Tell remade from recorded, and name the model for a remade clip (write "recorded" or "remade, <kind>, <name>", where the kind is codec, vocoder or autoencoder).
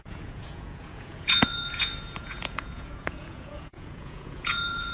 remade, vocoder, Vocos